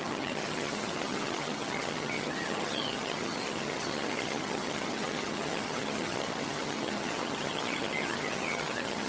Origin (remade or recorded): remade